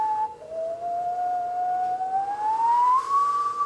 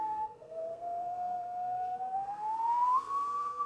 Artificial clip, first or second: second